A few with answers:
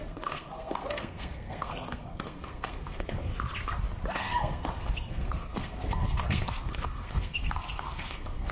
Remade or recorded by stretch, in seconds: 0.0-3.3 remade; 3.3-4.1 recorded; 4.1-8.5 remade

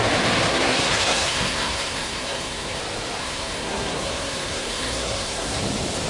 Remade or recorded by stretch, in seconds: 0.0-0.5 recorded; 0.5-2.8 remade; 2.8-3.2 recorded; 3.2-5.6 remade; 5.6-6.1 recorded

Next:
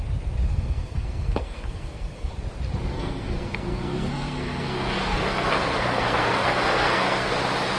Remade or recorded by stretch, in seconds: 0.0-0.5 recorded; 0.5-2.3 remade; 2.3-2.9 recorded; 2.9-7.3 remade; 7.3-7.8 recorded

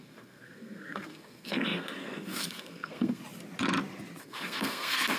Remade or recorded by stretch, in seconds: 0.0-3.2 remade; 3.2-4.2 recorded; 4.2-5.2 remade

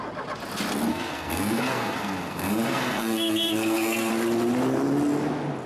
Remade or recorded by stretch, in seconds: 0.0-0.9 recorded; 0.9-4.1 remade; 4.1-5.7 recorded

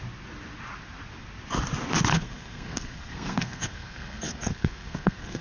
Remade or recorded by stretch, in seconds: 0.0-2.1 recorded; 2.1-5.4 remade